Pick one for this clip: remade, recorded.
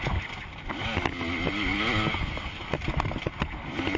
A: recorded